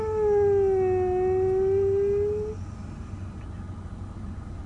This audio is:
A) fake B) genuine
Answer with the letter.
B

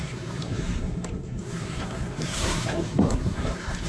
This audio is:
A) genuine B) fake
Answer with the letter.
B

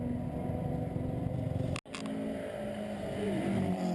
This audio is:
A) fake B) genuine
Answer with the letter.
B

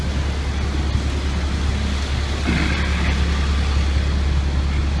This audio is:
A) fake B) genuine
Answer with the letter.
B